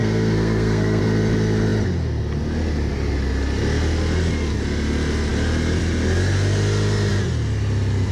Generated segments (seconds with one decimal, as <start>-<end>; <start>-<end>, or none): 0.0-1.0

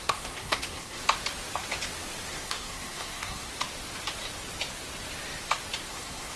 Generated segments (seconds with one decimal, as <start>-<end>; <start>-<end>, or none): 0.0-1.0; 2.3-3.5; 5.9-6.4

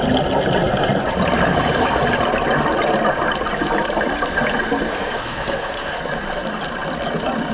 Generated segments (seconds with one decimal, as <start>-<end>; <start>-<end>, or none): 4.9-6.0

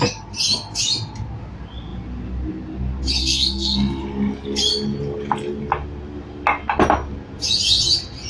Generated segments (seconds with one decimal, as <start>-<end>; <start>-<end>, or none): 3.2-4.0

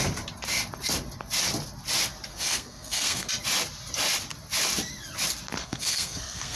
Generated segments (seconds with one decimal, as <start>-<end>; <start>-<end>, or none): 2.3-3.3; 5.6-6.6